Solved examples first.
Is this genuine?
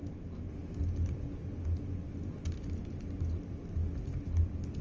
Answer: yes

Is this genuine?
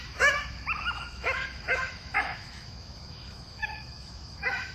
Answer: no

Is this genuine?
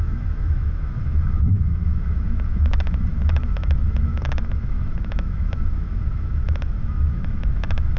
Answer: no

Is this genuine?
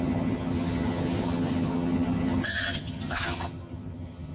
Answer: no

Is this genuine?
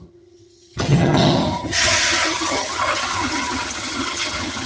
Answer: no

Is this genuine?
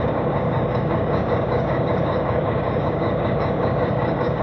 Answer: no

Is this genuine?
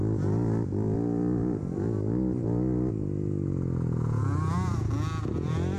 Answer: yes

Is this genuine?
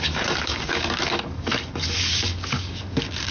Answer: no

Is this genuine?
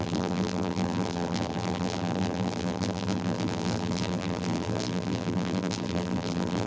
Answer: no